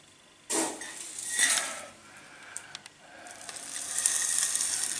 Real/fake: real